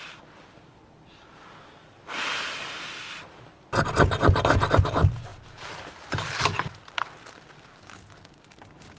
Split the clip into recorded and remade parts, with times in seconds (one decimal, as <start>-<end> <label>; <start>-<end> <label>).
0.0-9.0 recorded